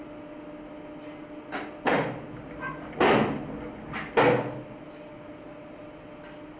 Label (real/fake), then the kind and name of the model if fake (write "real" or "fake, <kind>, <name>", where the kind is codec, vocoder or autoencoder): real